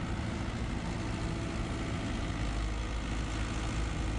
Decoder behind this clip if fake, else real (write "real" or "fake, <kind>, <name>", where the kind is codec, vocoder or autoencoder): real